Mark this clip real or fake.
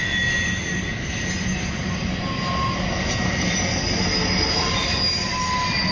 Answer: real